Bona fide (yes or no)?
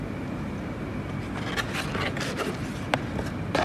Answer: yes